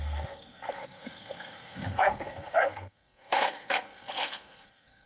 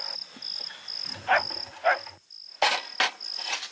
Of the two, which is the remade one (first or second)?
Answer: first